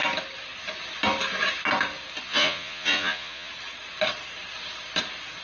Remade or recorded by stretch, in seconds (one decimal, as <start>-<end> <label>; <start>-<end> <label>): 0.0-2.3 recorded; 2.3-3.5 remade; 3.5-5.4 recorded